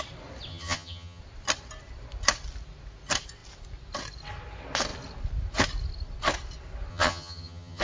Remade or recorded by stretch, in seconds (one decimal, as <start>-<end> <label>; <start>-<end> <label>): 0.0-0.5 recorded; 0.5-1.2 remade; 1.2-6.9 recorded; 6.9-7.8 remade

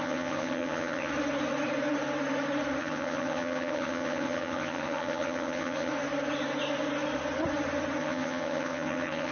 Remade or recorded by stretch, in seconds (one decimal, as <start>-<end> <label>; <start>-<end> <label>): 0.0-1.1 remade; 1.1-2.8 recorded; 2.8-5.9 remade; 5.9-8.0 recorded; 8.0-9.3 remade

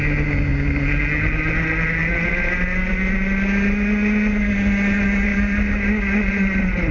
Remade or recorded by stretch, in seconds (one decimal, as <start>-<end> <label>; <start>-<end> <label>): 0.0-6.9 recorded